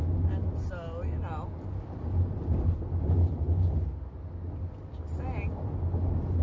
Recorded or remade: recorded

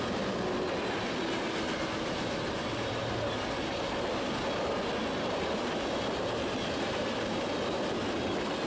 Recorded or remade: recorded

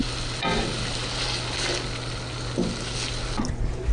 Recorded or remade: recorded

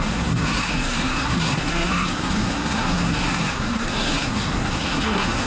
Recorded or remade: remade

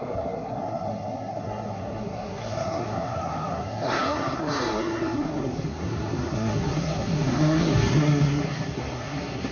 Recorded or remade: remade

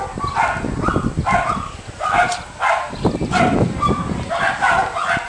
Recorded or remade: recorded